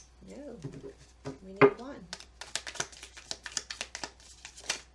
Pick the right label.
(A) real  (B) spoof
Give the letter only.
A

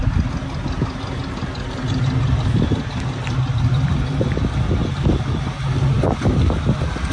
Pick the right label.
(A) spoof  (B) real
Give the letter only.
B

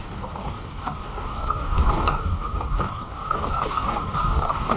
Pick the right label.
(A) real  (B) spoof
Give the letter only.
B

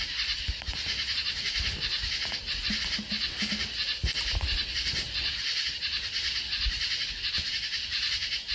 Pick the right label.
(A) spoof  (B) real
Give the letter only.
B